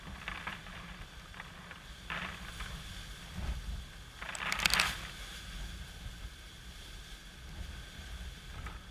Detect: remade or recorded recorded